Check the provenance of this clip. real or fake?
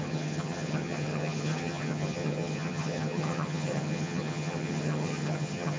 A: fake